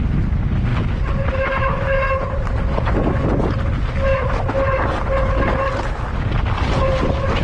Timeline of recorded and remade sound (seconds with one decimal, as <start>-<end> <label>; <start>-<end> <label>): 0.0-7.4 recorded